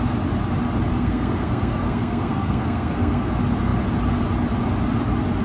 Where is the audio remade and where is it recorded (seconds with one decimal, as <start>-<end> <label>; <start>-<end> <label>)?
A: 0.0-0.9 recorded; 0.9-3.3 remade; 3.3-5.4 recorded